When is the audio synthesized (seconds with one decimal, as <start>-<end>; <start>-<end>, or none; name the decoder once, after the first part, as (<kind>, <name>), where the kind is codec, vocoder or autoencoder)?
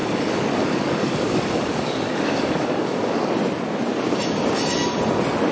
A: 0.0-3.3 (codec, DAC)